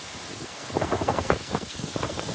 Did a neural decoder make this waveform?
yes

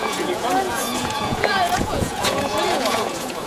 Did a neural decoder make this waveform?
yes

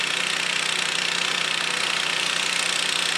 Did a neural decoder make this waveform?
no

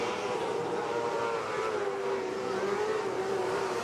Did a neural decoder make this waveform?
yes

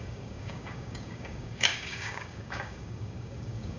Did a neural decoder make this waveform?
yes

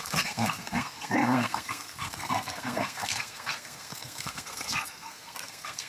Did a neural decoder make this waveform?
yes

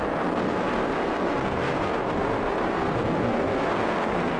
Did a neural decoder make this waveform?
yes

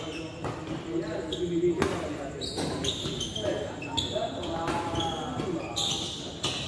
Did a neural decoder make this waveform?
no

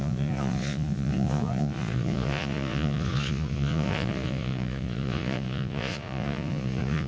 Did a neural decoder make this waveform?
yes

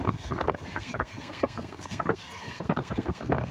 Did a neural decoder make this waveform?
yes